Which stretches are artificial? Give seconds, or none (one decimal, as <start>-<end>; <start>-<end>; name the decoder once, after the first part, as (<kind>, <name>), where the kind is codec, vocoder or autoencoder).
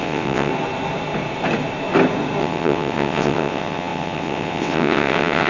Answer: 0.0-0.5 (vocoder, WaveNeXt); 2.4-5.5